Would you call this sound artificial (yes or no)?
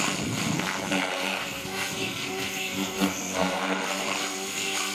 yes